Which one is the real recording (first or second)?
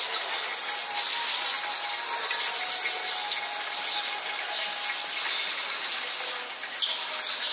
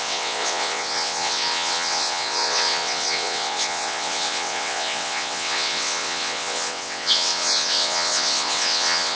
first